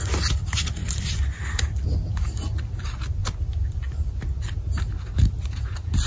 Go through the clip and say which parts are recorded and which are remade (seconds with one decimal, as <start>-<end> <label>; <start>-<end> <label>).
0.0-0.8 recorded; 0.8-1.7 remade; 1.7-3.2 recorded; 3.2-4.2 remade; 4.2-6.1 recorded